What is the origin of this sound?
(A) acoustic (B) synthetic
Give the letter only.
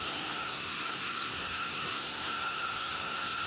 B